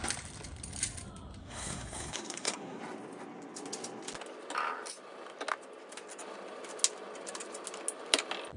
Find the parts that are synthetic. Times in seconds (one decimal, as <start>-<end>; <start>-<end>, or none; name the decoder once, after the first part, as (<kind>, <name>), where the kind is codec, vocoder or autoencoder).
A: 1.4-2.8 (codec, SNAC)